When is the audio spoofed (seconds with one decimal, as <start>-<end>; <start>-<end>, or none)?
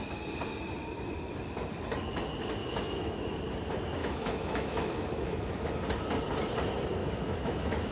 2.6-3.4; 4.0-5.7; 7.0-7.9